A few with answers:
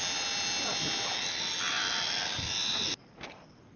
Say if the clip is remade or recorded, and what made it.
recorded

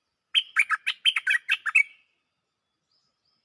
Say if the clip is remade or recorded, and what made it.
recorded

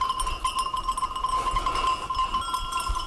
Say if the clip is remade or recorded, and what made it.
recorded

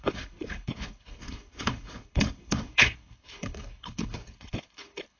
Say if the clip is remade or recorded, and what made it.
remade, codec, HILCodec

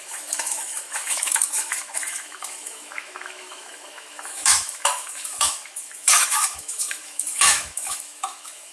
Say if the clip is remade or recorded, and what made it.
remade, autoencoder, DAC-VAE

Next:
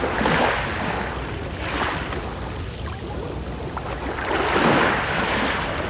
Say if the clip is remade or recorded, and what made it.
recorded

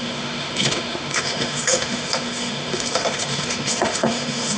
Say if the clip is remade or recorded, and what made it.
remade, autoencoder, DAC-VAE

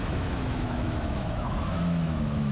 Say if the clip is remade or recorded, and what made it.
remade, autoencoder, DAC-VAE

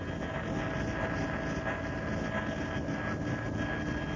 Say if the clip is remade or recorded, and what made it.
recorded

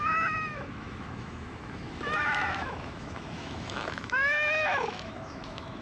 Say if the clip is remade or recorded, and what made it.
remade, autoencoder, DAC-VAE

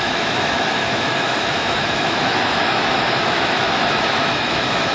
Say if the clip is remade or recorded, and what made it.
remade, autoencoder, DAC-VAE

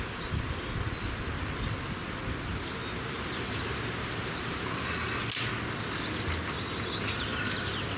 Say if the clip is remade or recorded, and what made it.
recorded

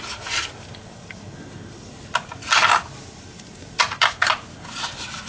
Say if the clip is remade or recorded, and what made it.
recorded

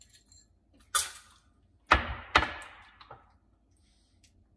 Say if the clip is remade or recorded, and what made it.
recorded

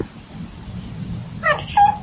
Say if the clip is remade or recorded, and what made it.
recorded